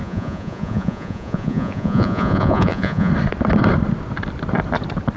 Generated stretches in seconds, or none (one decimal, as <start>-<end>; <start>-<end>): 0.0-3.1